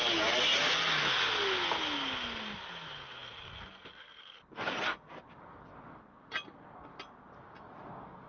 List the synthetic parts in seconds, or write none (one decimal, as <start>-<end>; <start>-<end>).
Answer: none